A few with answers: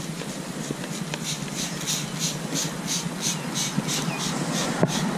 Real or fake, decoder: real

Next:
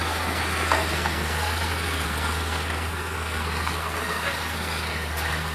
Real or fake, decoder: fake, codec, SNAC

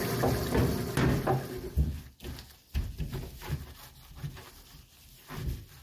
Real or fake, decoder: real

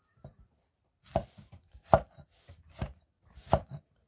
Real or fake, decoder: fake, vocoder, BigVGAN v2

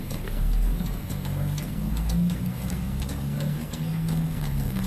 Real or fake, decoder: fake, codec, SNAC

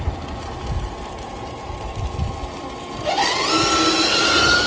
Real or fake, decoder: real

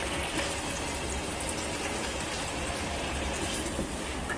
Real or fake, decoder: real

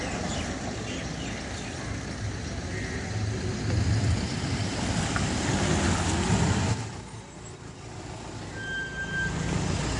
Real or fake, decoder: real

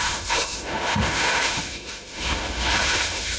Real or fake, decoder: fake, autoencoder, DAC-VAE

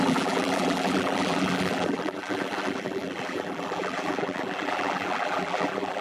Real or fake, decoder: fake, vocoder, BigVGAN v2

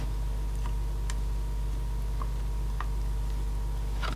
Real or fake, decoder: real